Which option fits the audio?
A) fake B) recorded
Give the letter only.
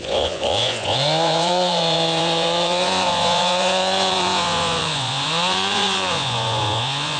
A